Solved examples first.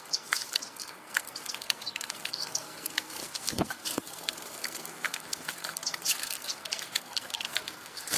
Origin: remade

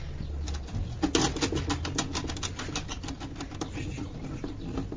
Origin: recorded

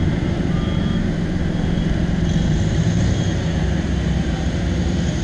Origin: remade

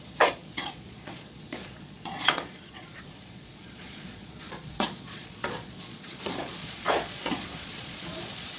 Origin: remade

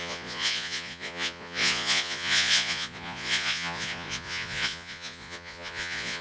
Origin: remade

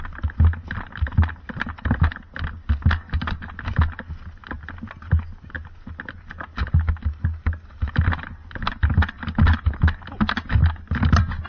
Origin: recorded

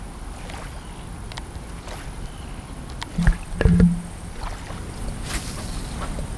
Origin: recorded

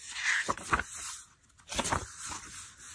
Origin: recorded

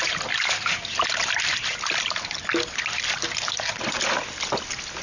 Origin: recorded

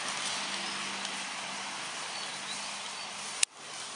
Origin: recorded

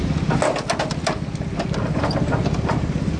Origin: recorded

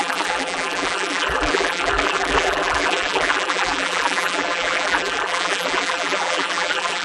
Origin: remade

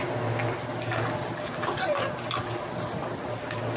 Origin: recorded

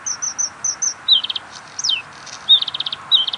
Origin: recorded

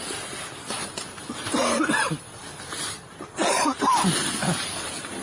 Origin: recorded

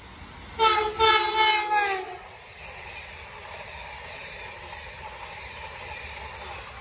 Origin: recorded